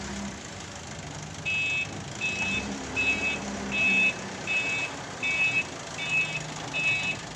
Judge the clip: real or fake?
real